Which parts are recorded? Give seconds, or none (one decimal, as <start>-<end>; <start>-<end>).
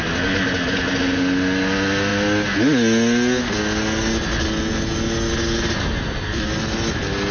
0.0-7.3